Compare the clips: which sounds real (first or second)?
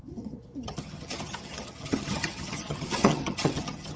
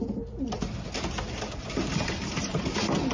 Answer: second